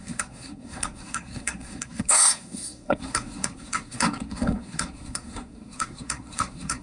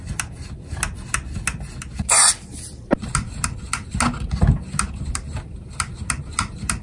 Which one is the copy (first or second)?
first